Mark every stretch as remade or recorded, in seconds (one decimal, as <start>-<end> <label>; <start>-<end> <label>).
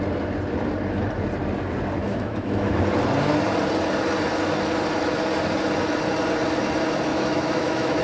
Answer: 0.0-2.0 recorded; 2.0-2.8 remade; 2.8-7.1 recorded; 7.1-8.0 remade